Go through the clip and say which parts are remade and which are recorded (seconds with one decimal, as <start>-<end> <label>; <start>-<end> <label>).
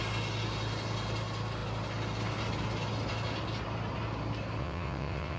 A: 0.0-4.6 recorded; 4.6-5.4 remade